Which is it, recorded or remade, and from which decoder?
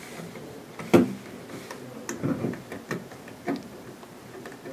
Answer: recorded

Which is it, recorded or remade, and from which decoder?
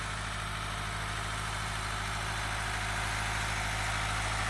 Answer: recorded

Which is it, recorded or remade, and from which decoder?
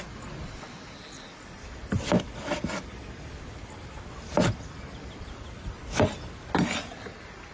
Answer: recorded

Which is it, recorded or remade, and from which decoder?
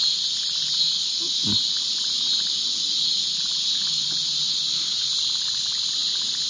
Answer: recorded